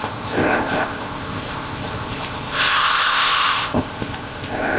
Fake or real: fake